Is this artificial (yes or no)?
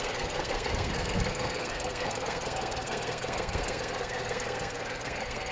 yes